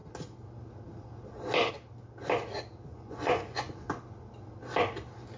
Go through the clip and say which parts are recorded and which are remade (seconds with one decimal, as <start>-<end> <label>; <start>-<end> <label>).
0.0-2.9 recorded; 2.9-3.9 remade; 3.9-5.4 recorded